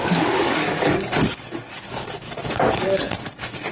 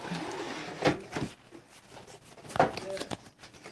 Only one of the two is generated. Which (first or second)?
first